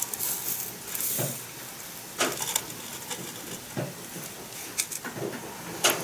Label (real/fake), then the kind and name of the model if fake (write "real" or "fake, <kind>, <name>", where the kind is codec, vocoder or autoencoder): real